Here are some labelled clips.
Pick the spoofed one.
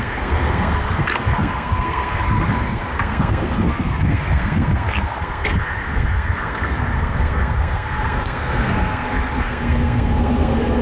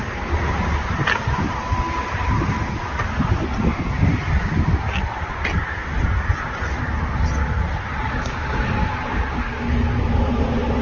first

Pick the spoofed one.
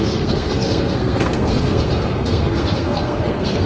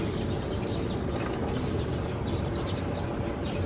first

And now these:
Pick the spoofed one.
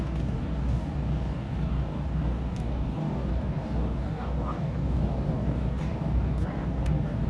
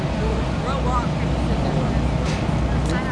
first